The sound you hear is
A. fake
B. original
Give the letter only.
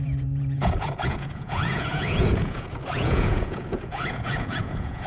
A